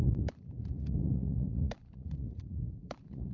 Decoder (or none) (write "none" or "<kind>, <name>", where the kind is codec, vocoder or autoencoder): vocoder, Vocos